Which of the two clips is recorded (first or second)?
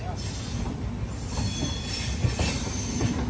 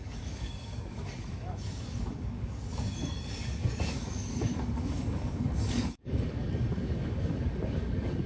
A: first